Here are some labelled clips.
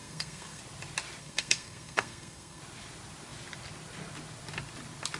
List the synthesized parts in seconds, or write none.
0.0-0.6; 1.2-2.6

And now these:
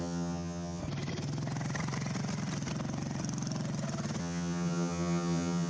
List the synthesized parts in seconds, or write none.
0.0-0.8; 4.2-5.7

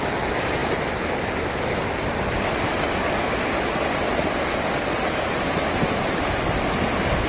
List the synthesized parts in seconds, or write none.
none

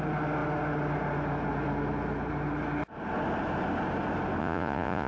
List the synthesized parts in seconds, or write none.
4.4-5.1

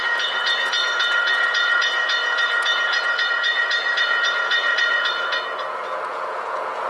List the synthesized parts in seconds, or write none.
0.0-6.9

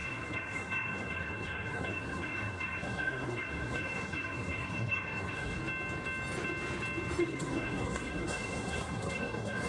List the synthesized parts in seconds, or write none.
0.0-5.6; 7.2-9.7

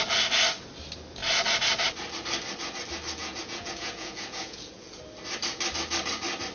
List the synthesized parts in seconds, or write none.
3.2-5.0